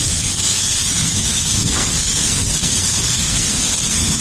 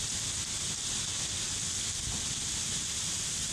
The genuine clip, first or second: second